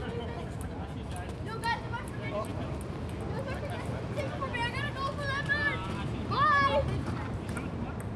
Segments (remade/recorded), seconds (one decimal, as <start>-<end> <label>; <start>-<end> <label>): 0.0-8.2 recorded